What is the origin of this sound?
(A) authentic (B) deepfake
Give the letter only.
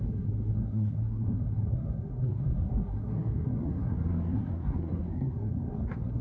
B